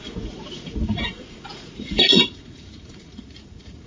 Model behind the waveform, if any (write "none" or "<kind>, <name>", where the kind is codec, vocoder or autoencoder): vocoder, Vocos